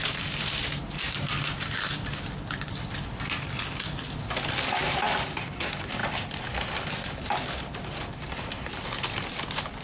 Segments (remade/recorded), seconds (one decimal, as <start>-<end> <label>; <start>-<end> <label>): 0.0-9.8 recorded